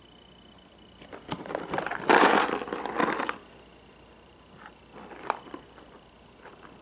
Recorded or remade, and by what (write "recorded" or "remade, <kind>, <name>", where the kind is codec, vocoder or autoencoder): recorded